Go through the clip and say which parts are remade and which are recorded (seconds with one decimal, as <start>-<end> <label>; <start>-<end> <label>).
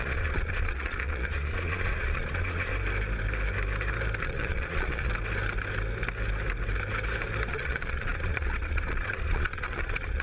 0.0-2.7 remade; 2.7-4.2 recorded; 4.2-5.1 remade; 5.1-7.5 recorded; 7.5-10.2 remade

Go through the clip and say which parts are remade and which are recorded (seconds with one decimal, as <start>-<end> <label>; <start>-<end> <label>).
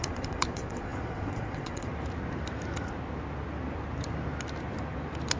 0.0-1.9 remade; 1.9-5.4 recorded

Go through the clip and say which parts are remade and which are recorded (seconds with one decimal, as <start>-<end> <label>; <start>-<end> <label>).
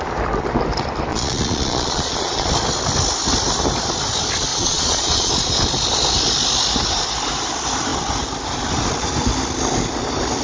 0.0-1.1 recorded; 1.1-2.5 remade; 2.5-4.5 recorded; 4.5-5.3 remade; 5.3-10.4 recorded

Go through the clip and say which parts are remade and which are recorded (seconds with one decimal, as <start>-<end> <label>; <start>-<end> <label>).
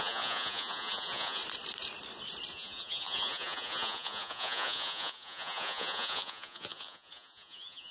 0.0-1.4 remade; 1.4-2.5 recorded; 2.5-7.9 remade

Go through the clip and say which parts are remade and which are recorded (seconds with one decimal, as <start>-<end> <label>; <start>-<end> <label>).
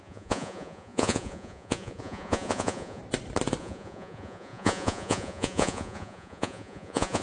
0.0-3.0 remade; 3.0-3.6 recorded; 3.6-7.2 remade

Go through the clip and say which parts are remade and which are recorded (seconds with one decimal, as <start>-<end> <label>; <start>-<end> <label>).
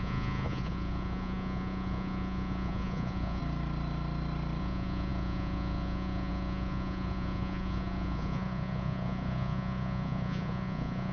0.0-3.4 remade; 3.4-4.6 recorded; 4.6-11.1 remade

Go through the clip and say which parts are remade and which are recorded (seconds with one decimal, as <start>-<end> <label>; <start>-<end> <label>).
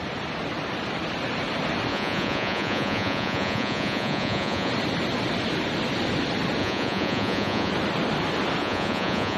0.0-1.9 recorded; 1.9-4.7 remade; 4.7-6.6 recorded; 6.6-7.7 remade; 7.7-8.6 recorded; 8.6-9.4 remade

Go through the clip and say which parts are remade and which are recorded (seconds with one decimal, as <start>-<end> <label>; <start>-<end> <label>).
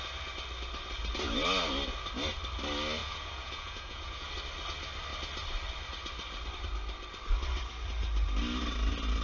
0.0-3.0 recorded; 3.0-4.3 remade; 4.3-9.2 recorded